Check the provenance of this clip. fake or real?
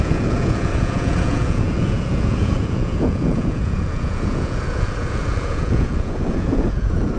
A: fake